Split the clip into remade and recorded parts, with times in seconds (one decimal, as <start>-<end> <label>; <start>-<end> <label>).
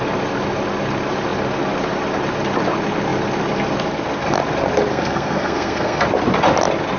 0.0-4.9 recorded; 4.9-6.0 remade; 6.0-7.0 recorded